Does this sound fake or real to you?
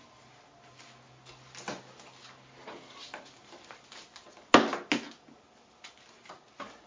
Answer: real